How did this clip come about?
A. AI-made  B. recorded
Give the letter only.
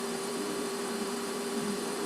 A